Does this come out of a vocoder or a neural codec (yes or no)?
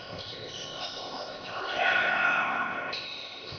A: yes